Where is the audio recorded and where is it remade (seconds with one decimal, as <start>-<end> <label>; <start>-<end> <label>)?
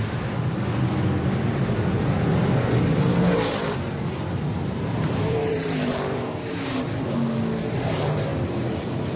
0.0-0.6 remade; 0.6-2.9 recorded; 2.9-6.6 remade; 6.6-9.2 recorded